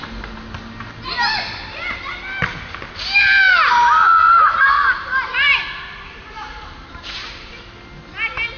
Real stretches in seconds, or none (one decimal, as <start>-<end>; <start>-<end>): 0.0-4.2; 7.5-8.6